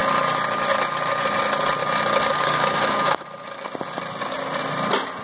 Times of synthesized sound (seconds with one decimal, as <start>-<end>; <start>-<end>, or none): 2.3-3.2